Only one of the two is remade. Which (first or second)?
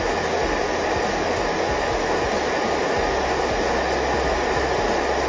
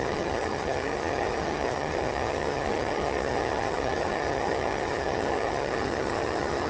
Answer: second